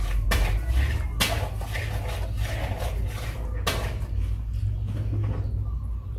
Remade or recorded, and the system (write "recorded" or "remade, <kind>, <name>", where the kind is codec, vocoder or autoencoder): recorded